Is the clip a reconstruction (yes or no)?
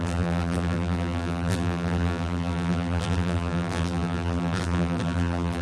yes